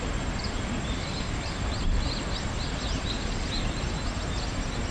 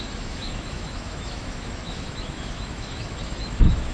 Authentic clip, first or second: first